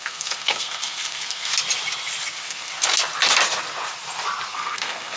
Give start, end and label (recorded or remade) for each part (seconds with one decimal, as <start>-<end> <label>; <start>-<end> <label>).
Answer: 0.0-1.5 remade; 1.5-2.3 recorded; 2.3-2.7 remade; 2.7-4.5 recorded; 4.5-5.2 remade